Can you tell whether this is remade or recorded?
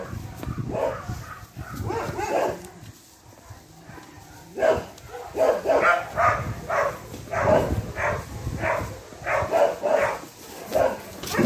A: recorded